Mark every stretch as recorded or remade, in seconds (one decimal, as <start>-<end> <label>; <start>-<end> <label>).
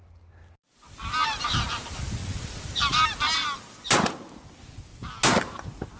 0.0-6.0 recorded